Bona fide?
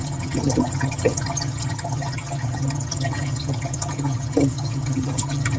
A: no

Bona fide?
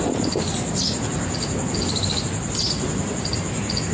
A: yes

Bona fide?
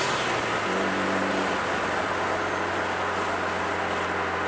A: yes